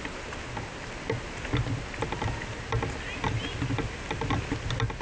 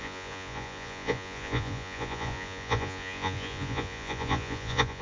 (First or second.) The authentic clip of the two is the first